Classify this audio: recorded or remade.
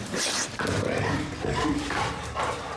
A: recorded